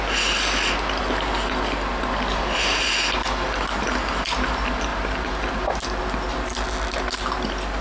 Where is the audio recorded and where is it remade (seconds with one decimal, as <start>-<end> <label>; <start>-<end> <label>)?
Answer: 0.0-2.3 recorded; 2.3-2.9 remade; 2.9-4.9 recorded; 4.9-6.0 remade; 6.0-7.8 recorded